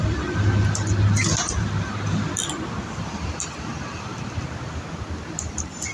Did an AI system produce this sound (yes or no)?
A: no